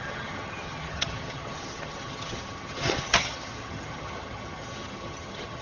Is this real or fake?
fake